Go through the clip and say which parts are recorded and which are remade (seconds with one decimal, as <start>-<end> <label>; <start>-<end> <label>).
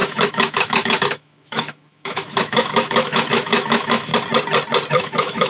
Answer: 0.0-4.1 remade; 4.1-4.9 recorded; 4.9-5.5 remade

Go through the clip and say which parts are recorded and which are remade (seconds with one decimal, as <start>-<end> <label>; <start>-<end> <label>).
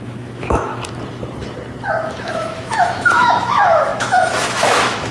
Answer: 0.0-0.7 remade; 0.7-1.9 recorded; 1.9-5.1 remade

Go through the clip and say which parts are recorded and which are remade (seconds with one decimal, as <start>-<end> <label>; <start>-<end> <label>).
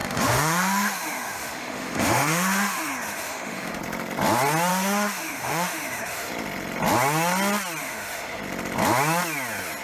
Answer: 0.0-3.8 remade; 3.8-4.7 recorded; 4.7-6.3 remade; 6.3-7.8 recorded; 7.8-8.4 remade; 8.4-9.8 recorded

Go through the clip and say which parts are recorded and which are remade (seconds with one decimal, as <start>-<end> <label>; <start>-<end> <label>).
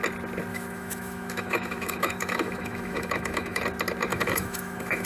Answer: 0.0-0.5 recorded; 0.5-3.6 remade; 3.6-4.1 recorded; 4.1-5.1 remade